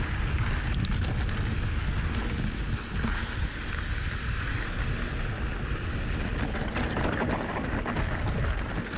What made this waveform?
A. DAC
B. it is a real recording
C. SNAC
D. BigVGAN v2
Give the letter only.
B